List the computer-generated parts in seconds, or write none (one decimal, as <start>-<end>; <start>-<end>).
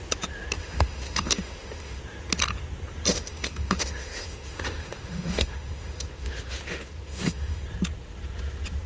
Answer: 0.6-2.0; 3.1-7.6